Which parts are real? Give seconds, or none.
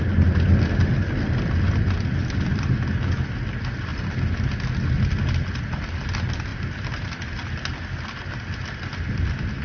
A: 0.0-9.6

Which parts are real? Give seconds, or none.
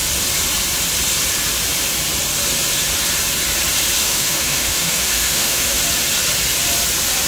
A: 0.0-4.0; 5.8-7.3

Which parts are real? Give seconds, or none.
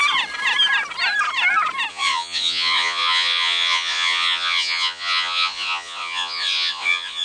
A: 0.0-1.9